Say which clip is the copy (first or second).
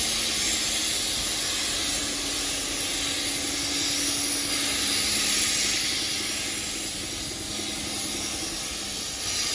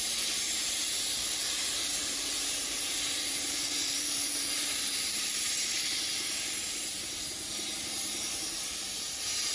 second